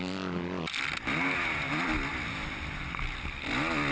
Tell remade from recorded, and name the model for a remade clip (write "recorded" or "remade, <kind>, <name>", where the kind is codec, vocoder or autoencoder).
recorded